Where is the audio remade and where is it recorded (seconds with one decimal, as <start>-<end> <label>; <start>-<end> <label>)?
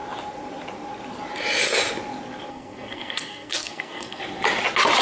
0.0-2.5 recorded; 2.5-4.2 remade; 4.2-5.0 recorded